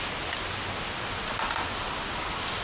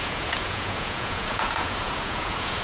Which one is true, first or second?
first